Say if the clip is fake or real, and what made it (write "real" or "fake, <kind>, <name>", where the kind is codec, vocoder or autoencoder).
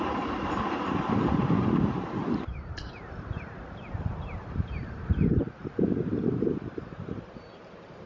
fake, vocoder, BigVGAN v2